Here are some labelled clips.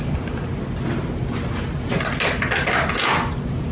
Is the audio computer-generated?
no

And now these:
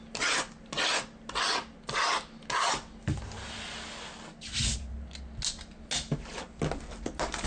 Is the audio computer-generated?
no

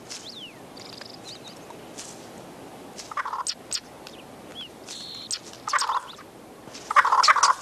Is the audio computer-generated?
no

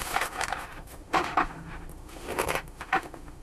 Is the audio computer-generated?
yes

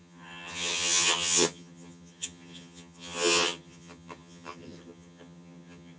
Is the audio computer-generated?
yes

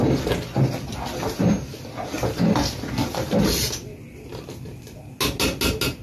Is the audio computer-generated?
no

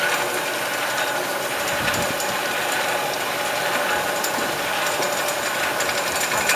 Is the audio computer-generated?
no